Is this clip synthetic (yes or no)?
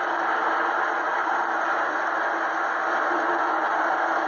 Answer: no